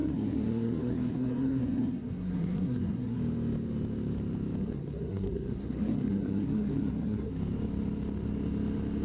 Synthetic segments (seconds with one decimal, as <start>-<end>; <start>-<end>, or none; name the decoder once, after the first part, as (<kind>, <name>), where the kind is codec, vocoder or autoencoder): 0.0-3.2 (codec, SNAC); 4.6-7.3